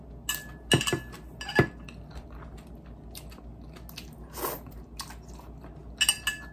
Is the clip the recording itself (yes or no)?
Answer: yes